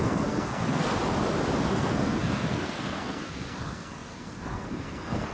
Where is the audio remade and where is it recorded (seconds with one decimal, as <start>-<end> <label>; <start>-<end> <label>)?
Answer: 0.0-0.9 remade; 0.9-1.7 recorded; 1.7-5.3 remade